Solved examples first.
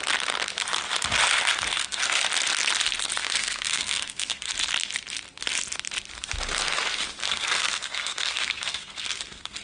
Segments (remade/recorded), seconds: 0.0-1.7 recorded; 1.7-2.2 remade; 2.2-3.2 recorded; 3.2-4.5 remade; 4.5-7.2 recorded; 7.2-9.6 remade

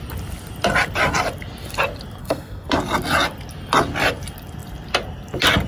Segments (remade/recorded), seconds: 0.0-2.2 recorded; 2.2-2.7 remade; 2.7-5.7 recorded

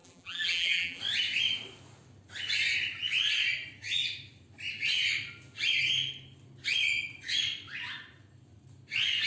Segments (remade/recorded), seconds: 0.0-1.0 remade; 1.0-9.3 recorded

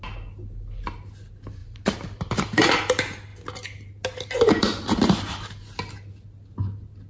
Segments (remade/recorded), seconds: 0.0-1.6 recorded; 1.6-2.8 remade; 2.8-7.1 recorded

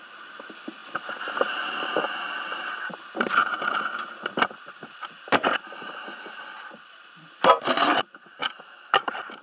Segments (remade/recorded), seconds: 0.0-8.4 recorded; 8.4-8.9 remade; 8.9-9.4 recorded

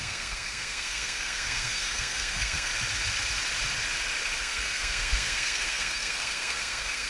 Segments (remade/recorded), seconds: 0.0-2.7 remade; 2.7-4.4 recorded; 4.4-7.1 remade